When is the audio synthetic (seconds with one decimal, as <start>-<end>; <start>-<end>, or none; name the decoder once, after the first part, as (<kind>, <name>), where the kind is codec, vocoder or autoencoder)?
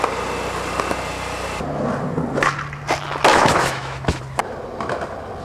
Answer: 3.3-4.2 (autoencoder, DAC-VAE)